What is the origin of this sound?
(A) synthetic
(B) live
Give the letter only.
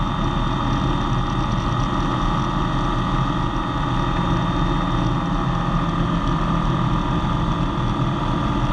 B